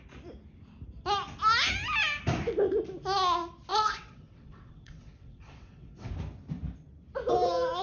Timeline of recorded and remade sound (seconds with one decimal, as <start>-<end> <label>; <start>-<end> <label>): 0.0-3.7 recorded; 3.7-6.1 remade; 6.1-7.8 recorded